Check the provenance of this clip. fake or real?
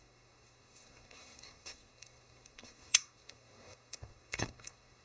fake